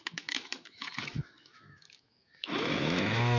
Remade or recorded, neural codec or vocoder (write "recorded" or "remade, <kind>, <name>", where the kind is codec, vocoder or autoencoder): remade, autoencoder, DAC-VAE